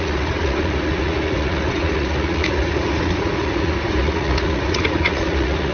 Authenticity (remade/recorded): remade